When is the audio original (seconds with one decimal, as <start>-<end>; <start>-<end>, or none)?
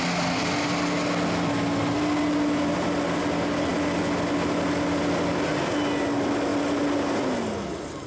0.0-8.1